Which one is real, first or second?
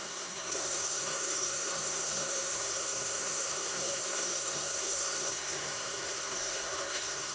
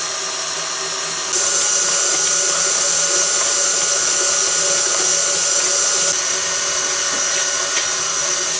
second